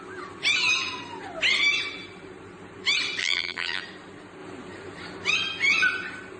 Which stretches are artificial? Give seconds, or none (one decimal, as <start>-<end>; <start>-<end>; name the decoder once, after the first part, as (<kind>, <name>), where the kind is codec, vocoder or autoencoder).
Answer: 3.2-3.8 (vocoder, BigVGAN v2)